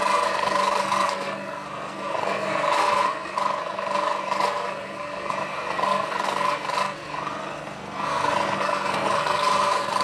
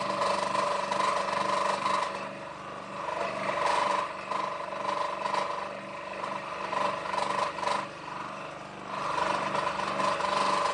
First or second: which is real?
second